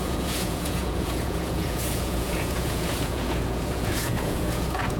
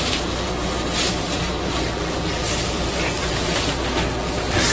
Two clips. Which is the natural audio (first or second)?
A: second